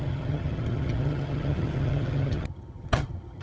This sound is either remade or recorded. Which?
remade